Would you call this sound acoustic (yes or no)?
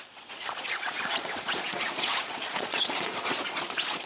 no